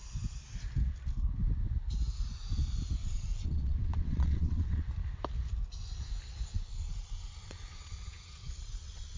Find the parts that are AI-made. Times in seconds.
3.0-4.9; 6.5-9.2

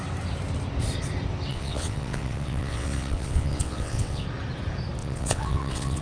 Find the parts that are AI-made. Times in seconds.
1.5-4.2; 5.0-6.0

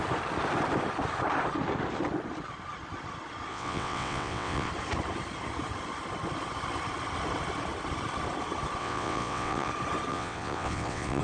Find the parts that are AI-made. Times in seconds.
3.5-4.7; 8.8-9.7; 10.1-11.2

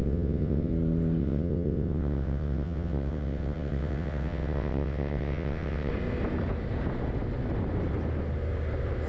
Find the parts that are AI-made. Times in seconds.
0.0-0.7; 1.2-5.9

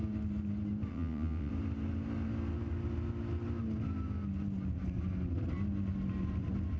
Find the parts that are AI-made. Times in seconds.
0.9-1.5